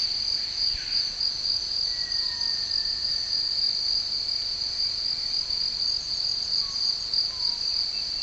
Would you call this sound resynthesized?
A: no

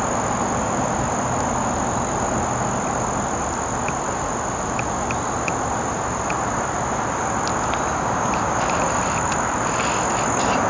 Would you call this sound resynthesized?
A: no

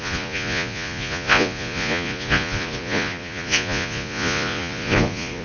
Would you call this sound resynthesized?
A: yes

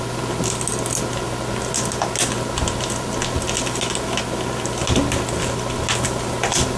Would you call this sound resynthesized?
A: no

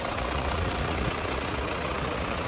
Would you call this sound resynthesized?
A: yes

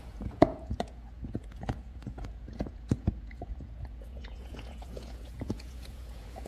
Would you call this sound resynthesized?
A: yes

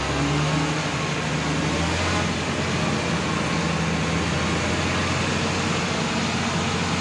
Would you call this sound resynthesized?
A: no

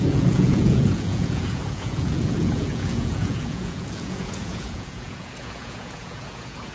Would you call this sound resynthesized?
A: yes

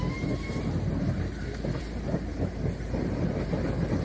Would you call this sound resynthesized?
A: no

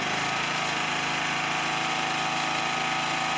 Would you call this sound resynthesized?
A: no